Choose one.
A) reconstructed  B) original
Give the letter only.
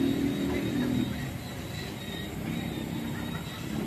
B